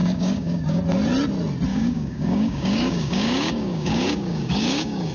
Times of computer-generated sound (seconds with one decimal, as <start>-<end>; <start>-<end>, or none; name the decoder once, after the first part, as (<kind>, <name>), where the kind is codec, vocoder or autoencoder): 0.0-0.8 (codec, DAC); 1.7-5.1